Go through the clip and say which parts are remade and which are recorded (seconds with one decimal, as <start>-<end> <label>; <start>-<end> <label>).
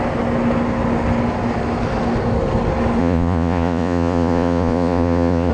0.0-3.0 recorded; 3.0-5.5 remade